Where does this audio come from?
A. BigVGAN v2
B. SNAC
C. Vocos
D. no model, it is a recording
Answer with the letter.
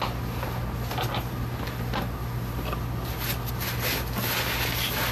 D